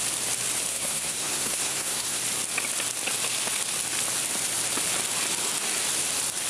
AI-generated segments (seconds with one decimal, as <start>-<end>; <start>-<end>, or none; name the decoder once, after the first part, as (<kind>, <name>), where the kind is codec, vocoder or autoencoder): 0.7-2.2 (codec, SNAC)